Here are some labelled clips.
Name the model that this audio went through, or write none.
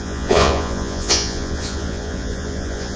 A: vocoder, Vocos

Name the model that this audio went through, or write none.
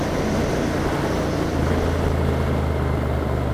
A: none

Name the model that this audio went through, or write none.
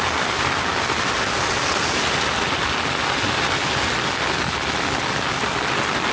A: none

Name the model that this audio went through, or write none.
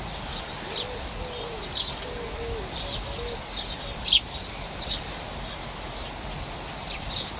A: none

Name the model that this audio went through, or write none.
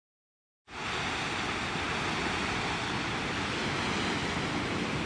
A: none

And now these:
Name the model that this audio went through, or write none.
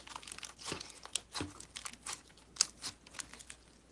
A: none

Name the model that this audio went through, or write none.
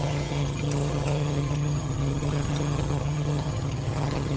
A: vocoder, HiFi-GAN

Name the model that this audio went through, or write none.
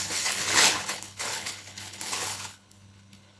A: codec, HILCodec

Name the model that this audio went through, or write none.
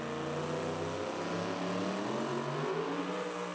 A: none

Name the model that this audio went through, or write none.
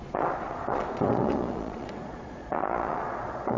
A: vocoder, Vocos